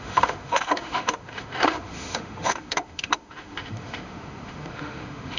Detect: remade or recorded remade